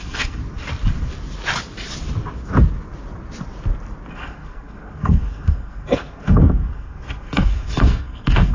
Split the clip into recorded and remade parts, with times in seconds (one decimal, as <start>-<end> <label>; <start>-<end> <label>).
0.0-0.4 remade; 0.4-4.1 recorded; 4.1-8.5 remade